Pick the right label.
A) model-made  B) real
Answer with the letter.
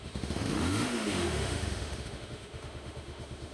A